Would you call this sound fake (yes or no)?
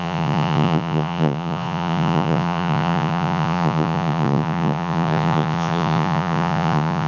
yes